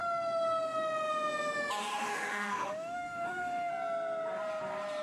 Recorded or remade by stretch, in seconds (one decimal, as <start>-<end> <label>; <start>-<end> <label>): 0.0-1.8 recorded; 1.8-3.7 remade; 3.7-5.0 recorded